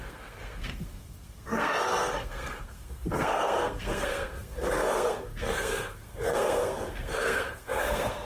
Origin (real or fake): fake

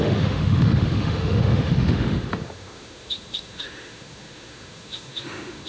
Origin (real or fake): fake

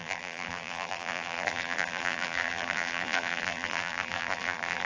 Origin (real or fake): fake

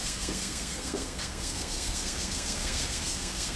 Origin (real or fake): fake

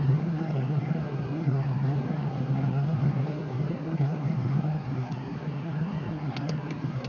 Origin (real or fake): fake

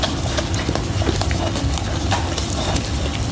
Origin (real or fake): real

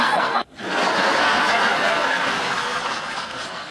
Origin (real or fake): fake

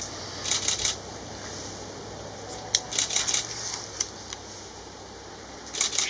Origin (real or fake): real